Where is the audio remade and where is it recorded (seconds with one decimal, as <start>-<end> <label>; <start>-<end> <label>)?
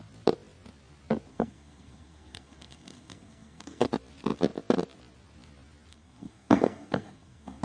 0.0-1.3 recorded; 1.3-3.9 remade; 3.9-5.9 recorded; 5.9-7.6 remade